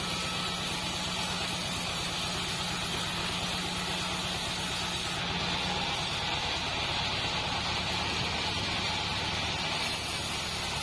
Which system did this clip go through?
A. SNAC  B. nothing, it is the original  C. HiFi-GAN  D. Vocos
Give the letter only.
B